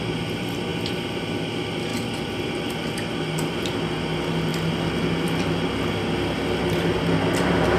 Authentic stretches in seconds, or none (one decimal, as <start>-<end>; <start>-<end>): 0.0-7.8